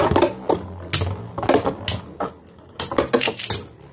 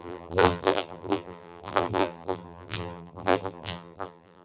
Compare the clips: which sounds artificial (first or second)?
second